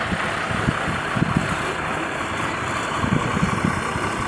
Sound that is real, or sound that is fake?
real